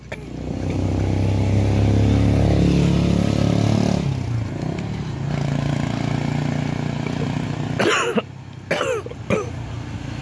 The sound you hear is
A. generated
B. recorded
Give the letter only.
B